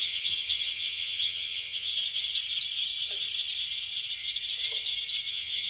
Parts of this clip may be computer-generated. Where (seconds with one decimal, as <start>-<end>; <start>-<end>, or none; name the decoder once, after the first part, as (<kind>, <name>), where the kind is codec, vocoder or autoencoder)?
0.0-1.9 (vocoder, HiFi-GAN); 5.3-5.7